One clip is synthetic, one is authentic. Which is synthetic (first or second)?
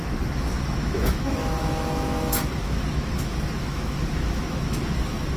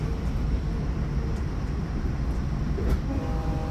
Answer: first